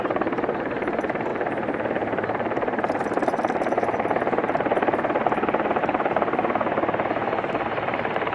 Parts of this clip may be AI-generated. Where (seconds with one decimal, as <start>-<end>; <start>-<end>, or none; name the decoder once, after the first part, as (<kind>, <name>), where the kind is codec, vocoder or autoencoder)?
0.0-8.3 (vocoder, BigVGAN v2)